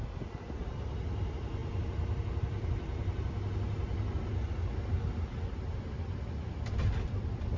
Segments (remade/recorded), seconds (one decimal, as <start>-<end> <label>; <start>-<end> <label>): 0.0-7.6 recorded